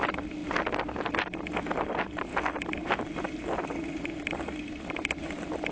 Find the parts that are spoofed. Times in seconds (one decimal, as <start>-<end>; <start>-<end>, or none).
none